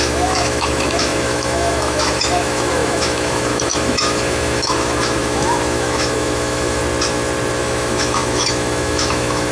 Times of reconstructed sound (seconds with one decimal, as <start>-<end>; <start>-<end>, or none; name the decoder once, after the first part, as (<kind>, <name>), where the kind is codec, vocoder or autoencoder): 0.0-6.8 (autoencoder, DAC-VAE); 7.6-9.5